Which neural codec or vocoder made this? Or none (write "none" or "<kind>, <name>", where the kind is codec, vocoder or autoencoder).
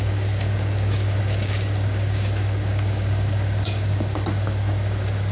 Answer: codec, DAC